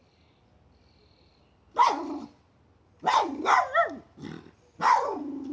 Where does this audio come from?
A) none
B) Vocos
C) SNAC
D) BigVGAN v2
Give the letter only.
A